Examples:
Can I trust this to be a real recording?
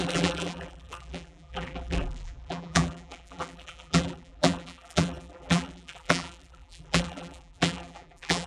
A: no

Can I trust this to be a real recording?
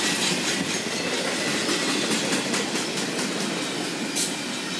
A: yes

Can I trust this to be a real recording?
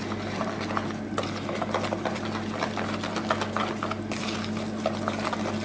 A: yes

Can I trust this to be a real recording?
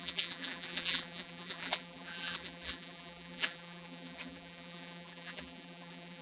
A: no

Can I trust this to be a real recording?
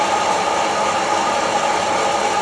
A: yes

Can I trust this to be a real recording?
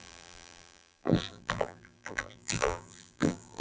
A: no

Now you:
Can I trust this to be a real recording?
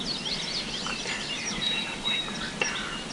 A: no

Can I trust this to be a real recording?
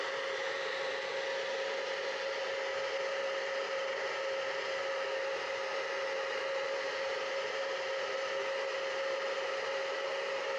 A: yes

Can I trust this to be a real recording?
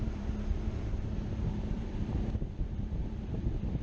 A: no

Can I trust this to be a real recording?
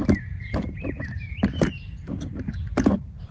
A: no